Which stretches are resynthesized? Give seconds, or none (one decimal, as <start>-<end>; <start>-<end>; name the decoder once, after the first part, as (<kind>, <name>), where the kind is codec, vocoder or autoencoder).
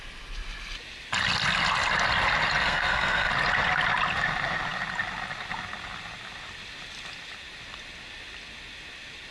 2.6-3.3 (codec, SNAC)